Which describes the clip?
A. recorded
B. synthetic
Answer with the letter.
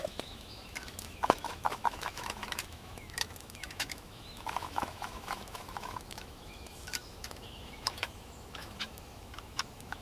B